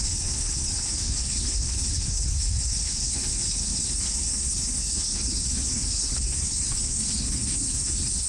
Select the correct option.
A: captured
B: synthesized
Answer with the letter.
B